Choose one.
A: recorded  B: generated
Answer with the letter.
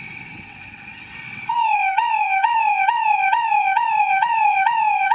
B